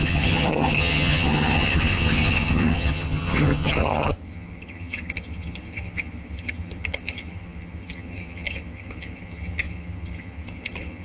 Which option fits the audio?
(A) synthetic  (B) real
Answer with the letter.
A